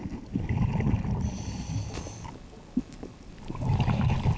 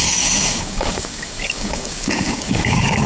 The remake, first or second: second